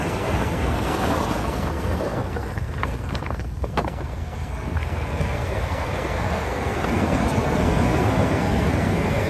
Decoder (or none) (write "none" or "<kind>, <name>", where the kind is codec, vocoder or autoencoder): codec, SNAC